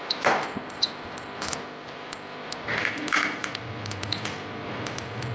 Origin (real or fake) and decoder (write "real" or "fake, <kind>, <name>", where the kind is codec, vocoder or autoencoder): fake, vocoder, BigVGAN v2